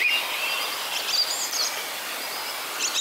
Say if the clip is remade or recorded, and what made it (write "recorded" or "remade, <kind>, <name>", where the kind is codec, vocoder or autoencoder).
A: recorded